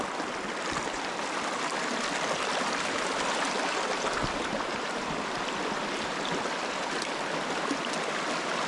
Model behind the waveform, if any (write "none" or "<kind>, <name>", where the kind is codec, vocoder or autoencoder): none